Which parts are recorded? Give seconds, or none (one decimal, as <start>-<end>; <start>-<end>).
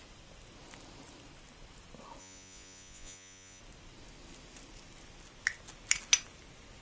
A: 0.0-2.2; 3.6-6.8